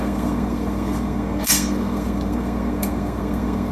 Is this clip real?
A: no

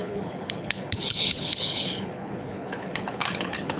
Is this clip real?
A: no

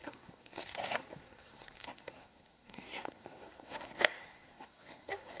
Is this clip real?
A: no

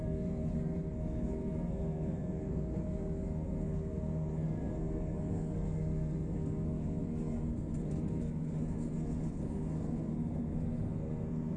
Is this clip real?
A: no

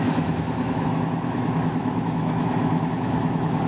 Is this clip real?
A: no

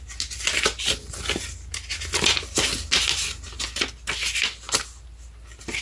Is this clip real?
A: yes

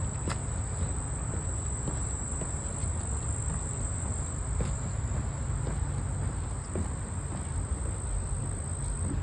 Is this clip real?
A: yes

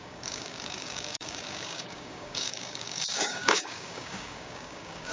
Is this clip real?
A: no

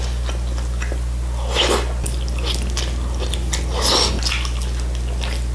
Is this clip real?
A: yes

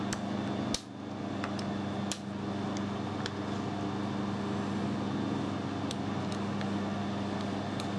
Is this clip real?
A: yes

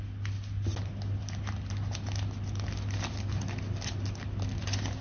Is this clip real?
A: yes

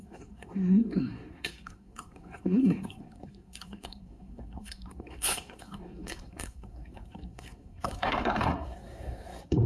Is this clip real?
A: no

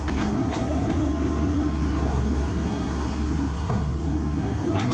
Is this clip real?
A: no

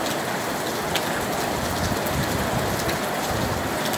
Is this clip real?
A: yes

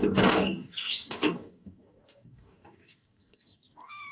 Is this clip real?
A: no